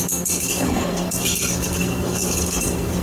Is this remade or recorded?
remade